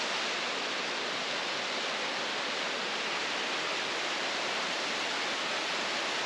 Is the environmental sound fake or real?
real